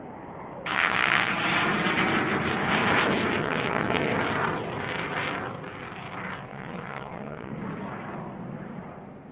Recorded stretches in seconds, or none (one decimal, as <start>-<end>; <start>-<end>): 0.0-0.7; 1.3-3.4; 4.1-6.5; 7.5-9.3